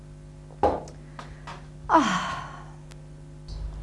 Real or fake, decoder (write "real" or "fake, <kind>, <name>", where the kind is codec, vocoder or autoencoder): real